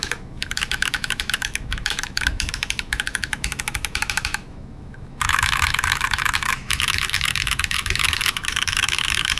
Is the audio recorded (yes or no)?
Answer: no